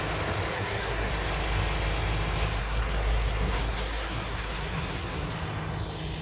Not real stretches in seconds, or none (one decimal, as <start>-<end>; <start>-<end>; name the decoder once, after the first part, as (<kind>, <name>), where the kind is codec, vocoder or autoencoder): 0.5-1.1 (codec, SNAC); 2.6-5.3